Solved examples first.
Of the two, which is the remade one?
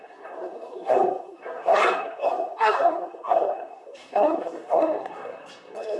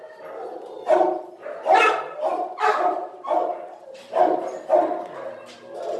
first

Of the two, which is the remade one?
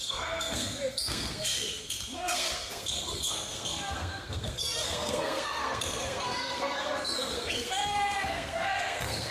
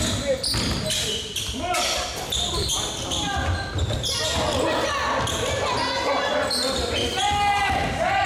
first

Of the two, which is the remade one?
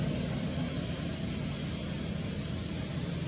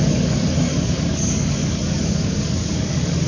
second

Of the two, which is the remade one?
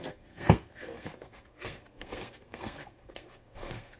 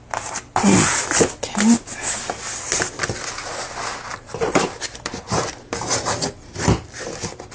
first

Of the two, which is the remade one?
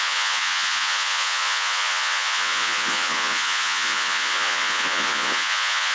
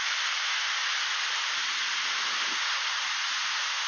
first